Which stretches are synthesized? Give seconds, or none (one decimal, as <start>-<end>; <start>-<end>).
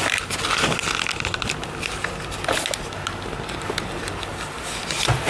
none